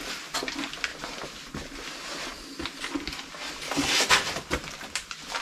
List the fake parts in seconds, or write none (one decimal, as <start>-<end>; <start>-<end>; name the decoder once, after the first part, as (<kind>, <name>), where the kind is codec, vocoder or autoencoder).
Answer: none

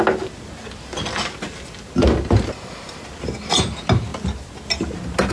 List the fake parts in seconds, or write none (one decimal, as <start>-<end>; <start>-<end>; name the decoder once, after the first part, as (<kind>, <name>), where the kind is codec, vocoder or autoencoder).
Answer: none

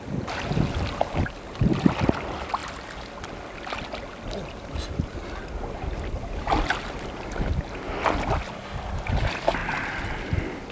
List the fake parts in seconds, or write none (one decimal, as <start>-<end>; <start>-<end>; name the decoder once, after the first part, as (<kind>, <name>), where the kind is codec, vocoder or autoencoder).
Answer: none

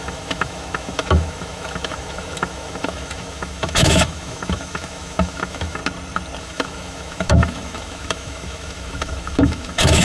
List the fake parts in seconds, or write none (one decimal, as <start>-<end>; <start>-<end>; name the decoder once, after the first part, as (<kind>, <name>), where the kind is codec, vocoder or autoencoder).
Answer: 0.0-5.8 (autoencoder, DAC-VAE); 6.4-10.0